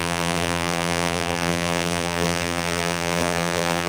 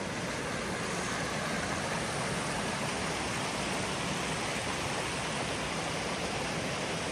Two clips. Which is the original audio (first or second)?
second